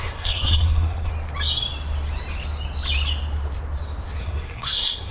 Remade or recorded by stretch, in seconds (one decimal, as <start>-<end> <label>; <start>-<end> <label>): 0.0-1.1 remade; 1.1-4.2 recorded; 4.2-5.1 remade